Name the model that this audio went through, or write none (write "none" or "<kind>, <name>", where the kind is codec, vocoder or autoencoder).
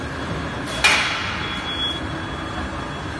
none